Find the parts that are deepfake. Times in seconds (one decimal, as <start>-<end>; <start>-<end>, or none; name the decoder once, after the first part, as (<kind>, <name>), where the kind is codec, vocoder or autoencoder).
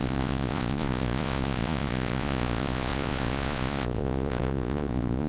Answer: 0.0-5.3 (vocoder, Vocos)